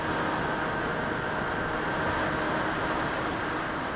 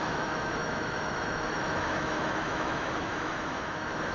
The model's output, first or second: second